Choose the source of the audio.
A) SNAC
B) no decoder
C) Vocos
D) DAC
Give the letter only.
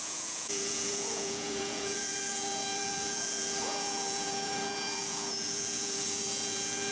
C